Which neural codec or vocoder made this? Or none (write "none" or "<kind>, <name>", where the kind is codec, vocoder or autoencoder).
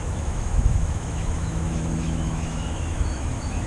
autoencoder, DAC-VAE